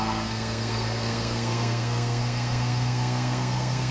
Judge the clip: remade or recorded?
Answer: remade